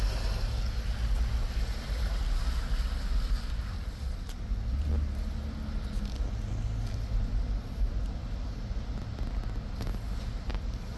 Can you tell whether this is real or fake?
real